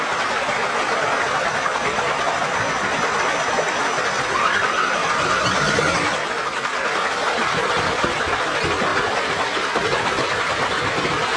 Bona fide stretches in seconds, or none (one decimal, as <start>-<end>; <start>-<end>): 0.0-11.4